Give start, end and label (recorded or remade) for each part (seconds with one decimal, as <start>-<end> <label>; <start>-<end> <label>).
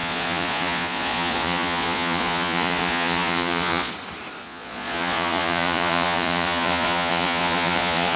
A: 0.0-3.9 remade; 3.9-4.4 recorded; 4.4-8.2 remade